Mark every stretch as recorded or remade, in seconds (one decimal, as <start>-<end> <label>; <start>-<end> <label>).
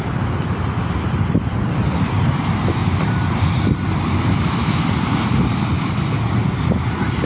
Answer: 0.0-2.8 recorded; 2.8-5.5 remade; 5.5-7.3 recorded